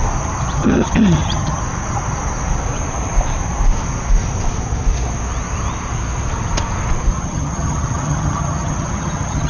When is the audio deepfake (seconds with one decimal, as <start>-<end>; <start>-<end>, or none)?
0.6-1.6; 7.1-9.5